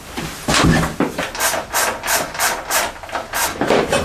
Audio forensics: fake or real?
real